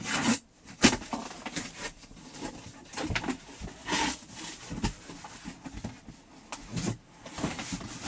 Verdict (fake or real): real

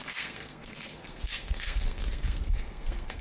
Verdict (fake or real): fake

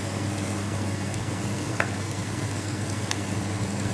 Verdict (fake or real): fake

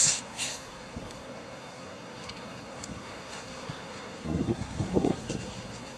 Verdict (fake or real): fake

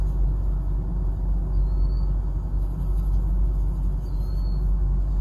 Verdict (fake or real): real